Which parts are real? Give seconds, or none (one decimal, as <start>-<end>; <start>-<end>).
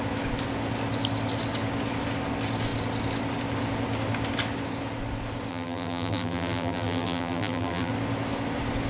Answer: 0.0-5.5; 7.9-8.9